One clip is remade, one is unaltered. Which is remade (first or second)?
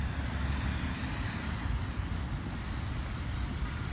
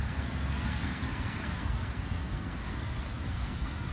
second